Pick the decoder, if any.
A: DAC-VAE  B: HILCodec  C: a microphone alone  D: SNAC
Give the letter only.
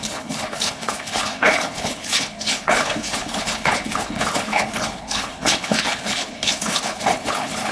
B